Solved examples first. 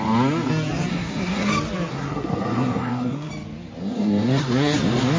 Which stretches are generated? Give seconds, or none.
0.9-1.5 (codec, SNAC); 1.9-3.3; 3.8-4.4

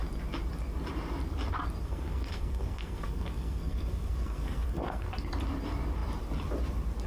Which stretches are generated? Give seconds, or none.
1.8-5.1 (codec, SNAC)

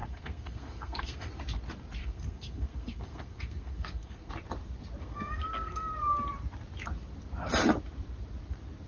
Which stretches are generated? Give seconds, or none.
0.0-1.3 (codec, SNAC); 2.0-4.3; 5.0-5.9

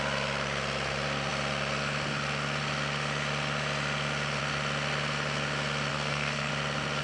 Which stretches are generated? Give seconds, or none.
5.9-6.5 (codec, SNAC)

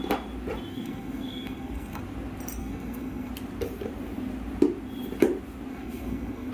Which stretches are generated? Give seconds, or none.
0.7-2.0 (codec, SNAC); 2.6-3.3; 5.7-6.5

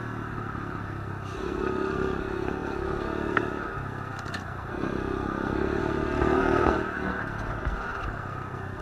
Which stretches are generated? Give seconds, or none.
0.0-8.8 (codec, SNAC)

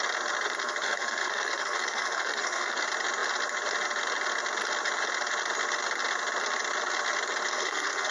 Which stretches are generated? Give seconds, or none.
0.6-2.7 (codec, SNAC); 7.5-8.1